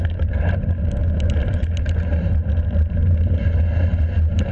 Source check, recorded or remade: recorded